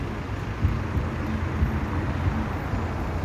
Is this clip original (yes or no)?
yes